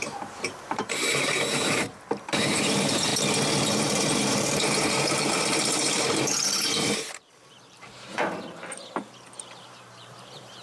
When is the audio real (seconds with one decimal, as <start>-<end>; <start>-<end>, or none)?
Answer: 3.1-3.8